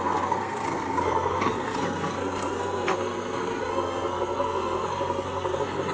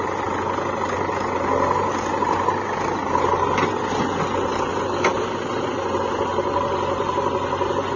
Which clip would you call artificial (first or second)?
first